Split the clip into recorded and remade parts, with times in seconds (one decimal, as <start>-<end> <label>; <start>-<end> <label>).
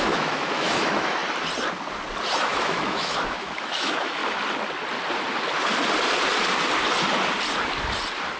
0.0-1.2 remade; 1.2-2.4 recorded; 2.4-4.2 remade; 4.2-8.4 recorded